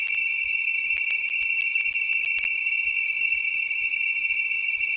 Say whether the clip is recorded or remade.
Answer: recorded